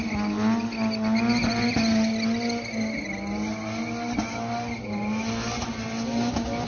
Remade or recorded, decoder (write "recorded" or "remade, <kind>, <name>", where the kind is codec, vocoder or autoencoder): recorded